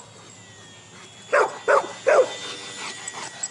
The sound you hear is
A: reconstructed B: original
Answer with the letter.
B